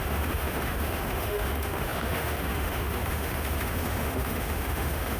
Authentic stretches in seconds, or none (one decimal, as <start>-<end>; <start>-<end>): none